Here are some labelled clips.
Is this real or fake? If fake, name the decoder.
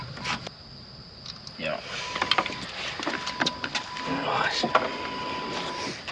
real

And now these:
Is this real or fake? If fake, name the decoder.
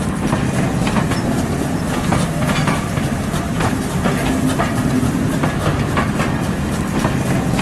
real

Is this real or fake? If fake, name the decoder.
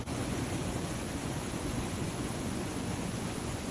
fake, vocoder, Vocos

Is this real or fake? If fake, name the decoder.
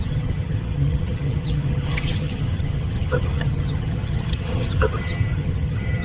fake, vocoder, HiFi-GAN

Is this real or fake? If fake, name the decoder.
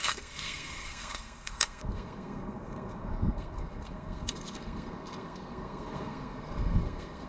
fake, codec, SNAC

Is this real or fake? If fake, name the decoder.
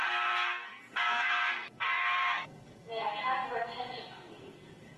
fake, codec, SNAC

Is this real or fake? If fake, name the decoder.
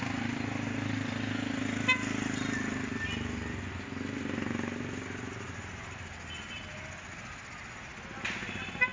real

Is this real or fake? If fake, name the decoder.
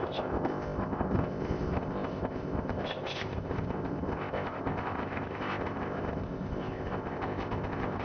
fake, codec, ZipCodec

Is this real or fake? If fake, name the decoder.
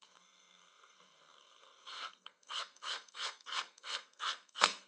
fake, codec, SNAC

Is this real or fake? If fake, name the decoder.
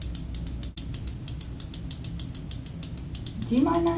real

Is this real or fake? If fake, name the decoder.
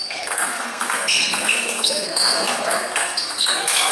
fake, codec, SNAC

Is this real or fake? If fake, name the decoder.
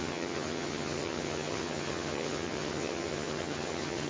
fake, vocoder, HiFi-GAN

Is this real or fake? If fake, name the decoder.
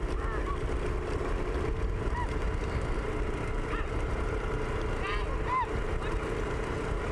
real